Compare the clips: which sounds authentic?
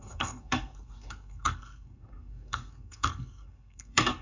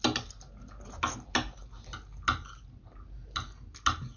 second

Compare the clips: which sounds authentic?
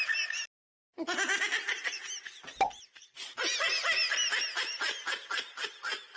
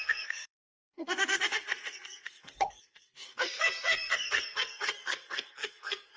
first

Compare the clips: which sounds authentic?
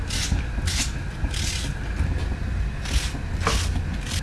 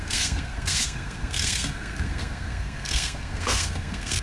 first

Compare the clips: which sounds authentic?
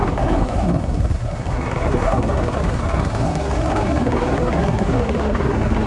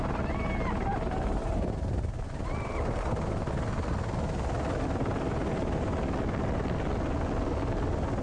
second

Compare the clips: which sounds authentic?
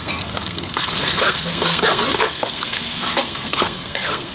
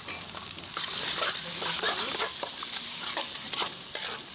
second